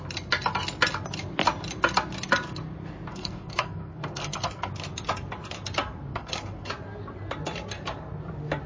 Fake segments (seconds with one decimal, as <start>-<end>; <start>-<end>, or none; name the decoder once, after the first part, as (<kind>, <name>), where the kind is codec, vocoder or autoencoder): 3.1-4.7 (codec, SNAC); 6.1-6.7